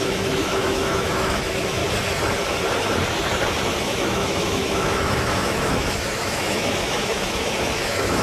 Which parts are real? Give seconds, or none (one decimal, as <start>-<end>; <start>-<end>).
1.8-3.8